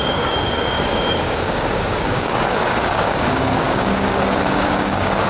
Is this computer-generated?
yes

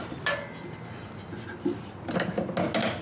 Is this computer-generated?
no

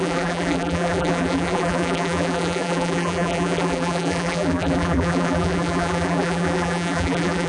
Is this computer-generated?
yes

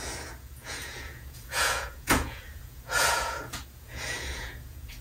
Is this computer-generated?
yes